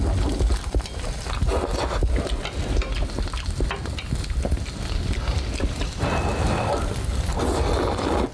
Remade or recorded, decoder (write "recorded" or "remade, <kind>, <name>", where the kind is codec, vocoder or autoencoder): recorded